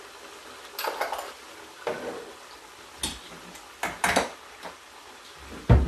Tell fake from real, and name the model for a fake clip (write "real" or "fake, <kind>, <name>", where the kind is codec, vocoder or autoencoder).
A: real